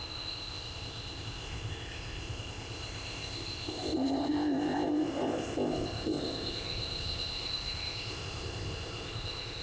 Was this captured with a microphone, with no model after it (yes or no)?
no